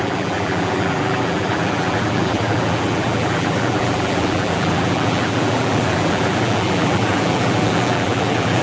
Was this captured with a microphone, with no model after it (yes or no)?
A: no